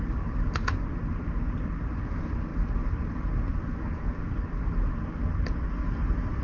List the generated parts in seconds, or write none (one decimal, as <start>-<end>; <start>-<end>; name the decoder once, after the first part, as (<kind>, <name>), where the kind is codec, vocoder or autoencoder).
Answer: none